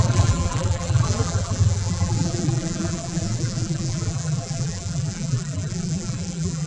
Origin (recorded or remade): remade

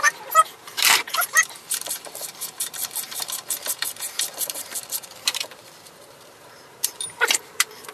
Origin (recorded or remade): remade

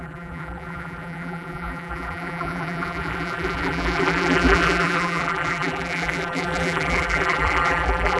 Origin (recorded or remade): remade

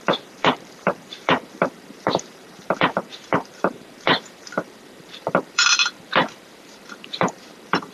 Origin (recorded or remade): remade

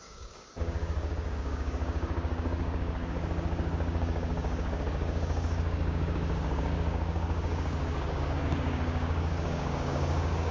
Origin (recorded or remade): remade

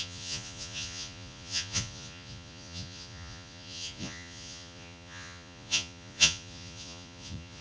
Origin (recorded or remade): remade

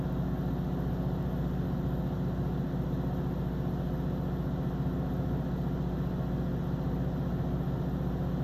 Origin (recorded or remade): recorded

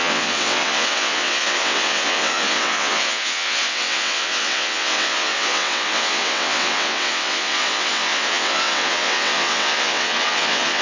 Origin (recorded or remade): remade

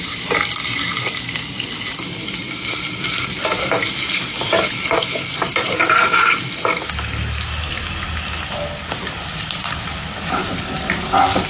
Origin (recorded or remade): recorded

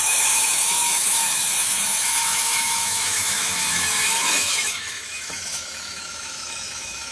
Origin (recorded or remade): remade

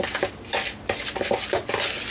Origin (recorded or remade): recorded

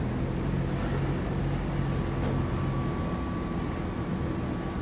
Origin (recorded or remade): recorded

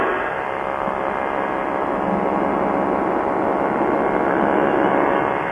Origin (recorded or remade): recorded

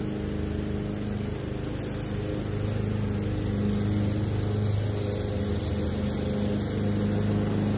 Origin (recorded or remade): recorded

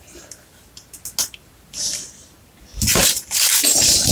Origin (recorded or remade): recorded